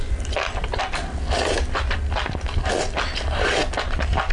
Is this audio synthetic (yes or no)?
no